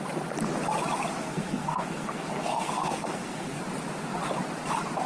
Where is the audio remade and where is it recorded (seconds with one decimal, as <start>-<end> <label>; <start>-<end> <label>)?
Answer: 0.0-1.2 recorded; 1.2-3.6 remade; 3.6-5.1 recorded